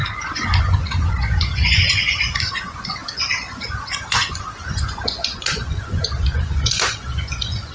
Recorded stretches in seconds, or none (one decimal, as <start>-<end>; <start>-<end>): none